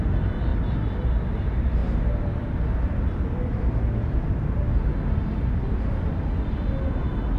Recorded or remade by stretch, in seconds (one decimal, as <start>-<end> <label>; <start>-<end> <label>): 0.0-1.8 recorded; 1.8-3.6 remade; 3.6-7.4 recorded